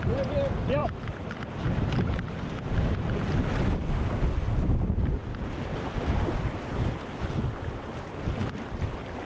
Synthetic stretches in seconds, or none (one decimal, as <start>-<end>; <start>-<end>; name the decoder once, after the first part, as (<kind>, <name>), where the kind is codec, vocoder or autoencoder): 0.8-2.0 (vocoder, BigVGAN v2); 5.2-7.4; 8.4-9.2

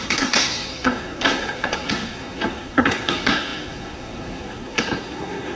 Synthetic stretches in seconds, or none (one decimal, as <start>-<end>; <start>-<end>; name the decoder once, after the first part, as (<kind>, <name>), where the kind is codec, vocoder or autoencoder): 0.0-5.6 (codec, SNAC)